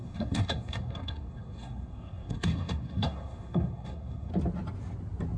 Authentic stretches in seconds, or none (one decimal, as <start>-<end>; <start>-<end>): 4.3-5.4